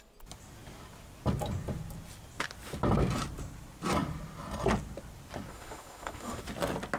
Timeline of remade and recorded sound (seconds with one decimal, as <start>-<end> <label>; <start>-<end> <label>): 0.0-5.5 recorded; 5.5-6.4 remade; 6.4-7.0 recorded